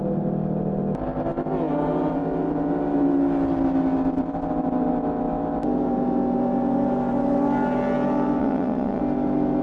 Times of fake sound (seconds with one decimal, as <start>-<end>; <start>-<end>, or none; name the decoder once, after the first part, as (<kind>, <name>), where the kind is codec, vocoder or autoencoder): 8.4-9.0 (vocoder, Vocos)